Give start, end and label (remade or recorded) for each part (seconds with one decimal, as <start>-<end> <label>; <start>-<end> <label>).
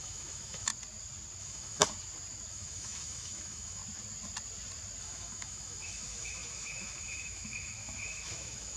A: 0.0-0.7 remade; 0.7-1.4 recorded; 1.4-1.8 remade; 1.8-2.5 recorded; 2.5-3.8 remade; 3.8-5.0 recorded; 5.0-8.8 remade